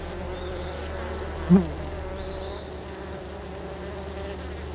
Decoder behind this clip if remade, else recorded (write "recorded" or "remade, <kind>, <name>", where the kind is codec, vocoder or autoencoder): recorded